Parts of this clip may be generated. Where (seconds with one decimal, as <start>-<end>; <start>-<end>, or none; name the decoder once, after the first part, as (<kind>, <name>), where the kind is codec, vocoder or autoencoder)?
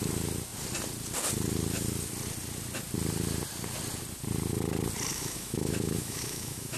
5.1-6.8 (autoencoder, DAC-VAE)